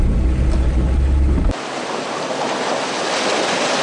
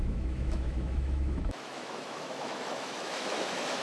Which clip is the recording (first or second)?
first